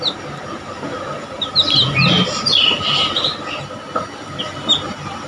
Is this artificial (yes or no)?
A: no